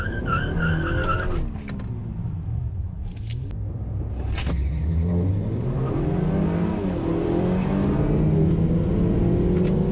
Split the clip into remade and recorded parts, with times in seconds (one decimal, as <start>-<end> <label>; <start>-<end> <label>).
0.0-7.1 recorded; 7.1-7.7 remade; 7.7-9.9 recorded